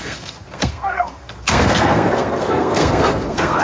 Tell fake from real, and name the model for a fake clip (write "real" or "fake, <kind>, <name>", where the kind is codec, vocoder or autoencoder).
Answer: fake, codec, SNAC